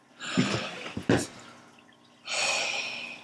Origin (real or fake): real